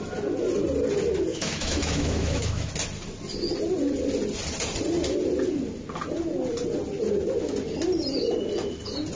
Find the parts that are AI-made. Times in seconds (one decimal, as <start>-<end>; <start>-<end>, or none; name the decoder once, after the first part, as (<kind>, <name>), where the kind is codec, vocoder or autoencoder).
1.3-2.7 (autoencoder, DAC-VAE)